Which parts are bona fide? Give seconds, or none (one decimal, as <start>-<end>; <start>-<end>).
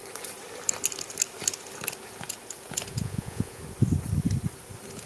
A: 0.0-3.0; 3.6-5.1